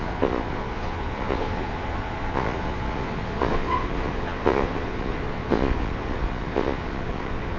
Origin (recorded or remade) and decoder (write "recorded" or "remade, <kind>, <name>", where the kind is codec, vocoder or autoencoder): remade, vocoder, Vocos